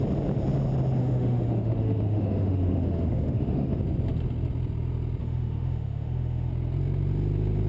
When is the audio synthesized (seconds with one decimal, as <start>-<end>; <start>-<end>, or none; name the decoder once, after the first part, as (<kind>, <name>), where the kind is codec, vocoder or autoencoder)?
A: 1.0-3.8 (autoencoder, DAC-VAE); 5.2-6.5